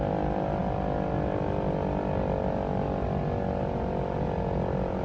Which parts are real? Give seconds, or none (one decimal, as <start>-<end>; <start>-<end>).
0.0-5.0